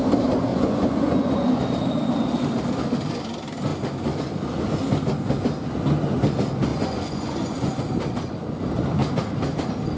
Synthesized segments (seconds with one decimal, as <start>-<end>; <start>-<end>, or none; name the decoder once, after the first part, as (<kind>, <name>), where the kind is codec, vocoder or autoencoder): 0.5-1.6 (vocoder, Vocos); 6.7-7.8